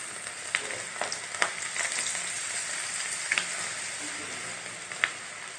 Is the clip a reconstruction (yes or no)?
no